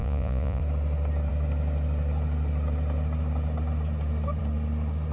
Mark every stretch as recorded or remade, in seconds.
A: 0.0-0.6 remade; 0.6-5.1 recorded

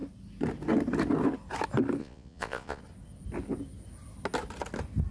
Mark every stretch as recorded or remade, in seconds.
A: 0.0-2.0 recorded; 2.0-2.8 remade; 2.8-5.1 recorded

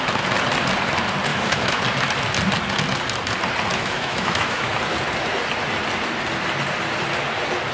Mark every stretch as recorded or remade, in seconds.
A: 0.0-1.3 recorded; 1.3-1.8 remade; 1.8-3.7 recorded; 3.7-4.7 remade; 4.7-7.7 recorded

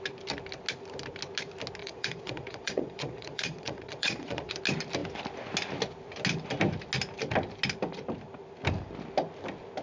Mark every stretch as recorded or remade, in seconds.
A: 0.0-1.8 recorded; 1.8-4.6 remade; 4.6-9.8 recorded

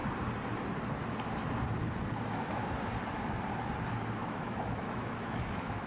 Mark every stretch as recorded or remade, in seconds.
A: 0.0-4.2 recorded; 4.2-5.9 remade

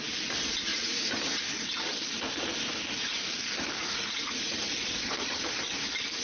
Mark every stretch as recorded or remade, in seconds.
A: 0.0-0.7 recorded; 0.7-1.4 remade; 1.4-3.8 recorded; 3.8-4.5 remade; 4.5-6.2 recorded